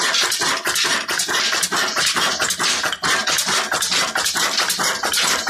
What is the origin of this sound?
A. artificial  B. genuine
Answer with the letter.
B